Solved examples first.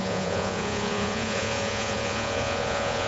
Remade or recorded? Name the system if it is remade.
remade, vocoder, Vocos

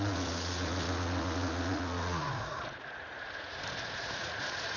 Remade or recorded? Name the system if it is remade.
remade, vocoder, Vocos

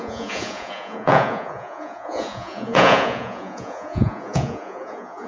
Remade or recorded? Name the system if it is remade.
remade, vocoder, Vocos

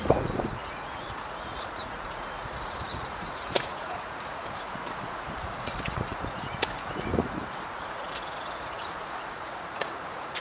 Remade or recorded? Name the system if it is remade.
remade, vocoder, Vocos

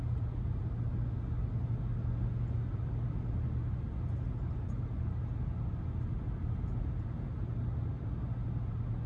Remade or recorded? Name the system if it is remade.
recorded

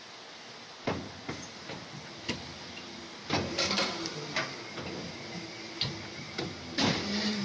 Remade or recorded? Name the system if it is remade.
recorded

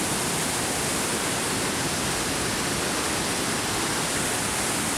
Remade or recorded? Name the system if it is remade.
recorded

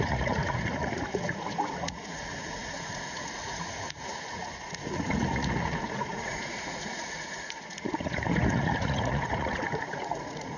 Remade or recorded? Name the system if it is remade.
remade, vocoder, Vocos